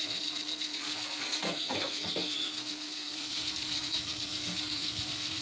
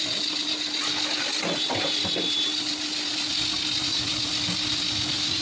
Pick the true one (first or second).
second